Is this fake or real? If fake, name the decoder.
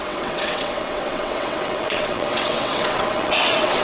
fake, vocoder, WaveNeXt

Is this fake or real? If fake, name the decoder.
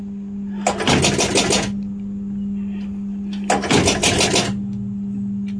real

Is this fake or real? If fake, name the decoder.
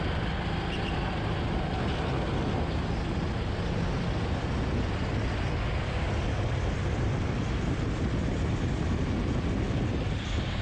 real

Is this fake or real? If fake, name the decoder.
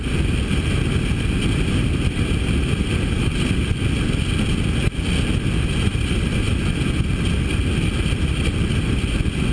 real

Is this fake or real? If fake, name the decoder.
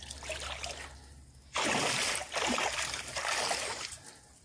real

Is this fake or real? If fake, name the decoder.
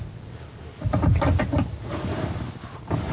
real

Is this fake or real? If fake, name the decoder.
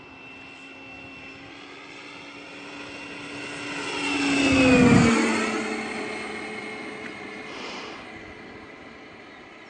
real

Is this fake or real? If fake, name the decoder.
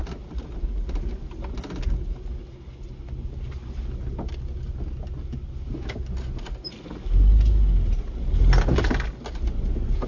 real